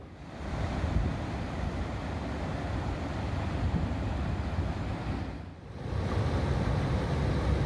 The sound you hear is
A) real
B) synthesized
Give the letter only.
A